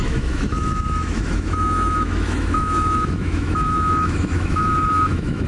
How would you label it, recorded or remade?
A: remade